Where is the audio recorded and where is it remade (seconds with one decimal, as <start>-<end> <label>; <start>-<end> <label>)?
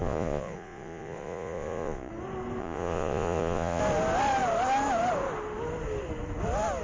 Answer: 0.0-2.1 remade; 2.1-2.6 recorded; 2.6-3.8 remade; 3.8-6.8 recorded